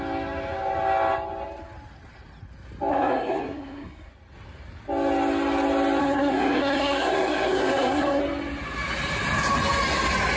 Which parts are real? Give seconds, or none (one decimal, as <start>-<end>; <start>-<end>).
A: 0.0-2.9; 4.1-6.0; 8.2-10.4